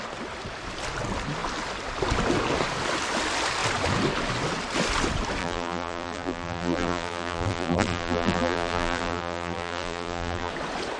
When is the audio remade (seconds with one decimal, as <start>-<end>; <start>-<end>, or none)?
5.4-10.5